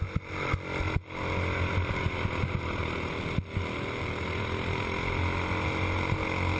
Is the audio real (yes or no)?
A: yes